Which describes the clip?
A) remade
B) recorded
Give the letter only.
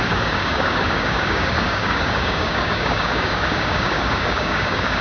A